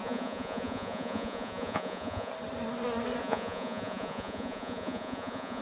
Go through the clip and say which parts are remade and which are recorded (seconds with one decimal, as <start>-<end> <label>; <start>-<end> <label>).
0.0-2.3 remade; 2.3-3.2 recorded; 3.2-5.6 remade